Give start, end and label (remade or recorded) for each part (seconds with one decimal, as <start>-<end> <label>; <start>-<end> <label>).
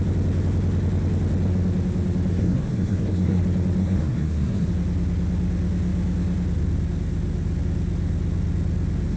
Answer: 0.0-2.3 recorded; 2.3-3.4 remade; 3.4-3.8 recorded; 3.8-4.7 remade; 4.7-9.2 recorded